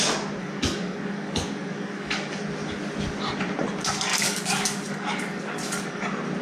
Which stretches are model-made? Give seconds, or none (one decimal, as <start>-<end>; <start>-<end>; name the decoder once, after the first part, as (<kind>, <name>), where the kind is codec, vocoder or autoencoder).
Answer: 0.4-2.4 (codec, DAC); 4.1-6.0

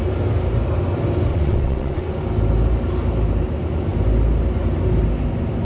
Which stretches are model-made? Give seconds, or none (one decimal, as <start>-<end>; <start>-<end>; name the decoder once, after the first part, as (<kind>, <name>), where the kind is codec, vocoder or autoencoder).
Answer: 1.3-2.1 (vocoder, WaveNeXt)

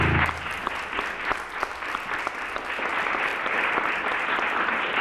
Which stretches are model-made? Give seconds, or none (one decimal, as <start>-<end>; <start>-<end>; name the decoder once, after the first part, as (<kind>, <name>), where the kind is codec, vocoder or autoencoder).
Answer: 3.3-4.0 (vocoder, BigVGAN v2)

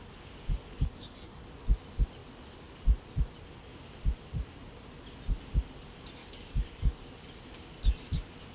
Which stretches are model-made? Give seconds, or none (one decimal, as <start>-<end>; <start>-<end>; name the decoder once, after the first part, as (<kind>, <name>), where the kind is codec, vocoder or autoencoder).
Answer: 0.6-1.4 (codec, DAC); 6.2-7.1